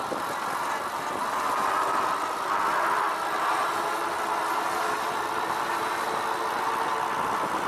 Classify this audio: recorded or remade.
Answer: recorded